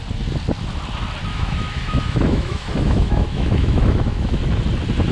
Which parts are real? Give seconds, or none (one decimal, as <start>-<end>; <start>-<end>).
0.0-1.3; 4.4-5.1